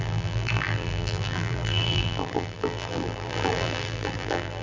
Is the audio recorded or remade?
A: remade